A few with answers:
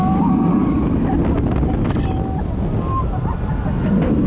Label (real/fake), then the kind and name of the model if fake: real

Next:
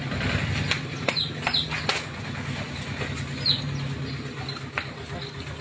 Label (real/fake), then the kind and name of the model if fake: real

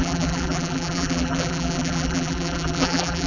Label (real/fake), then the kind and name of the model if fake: fake, vocoder, BigVGAN v2